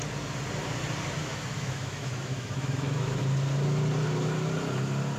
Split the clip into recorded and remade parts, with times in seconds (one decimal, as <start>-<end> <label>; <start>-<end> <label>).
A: 0.0-1.2 recorded; 1.2-3.2 remade; 3.2-5.2 recorded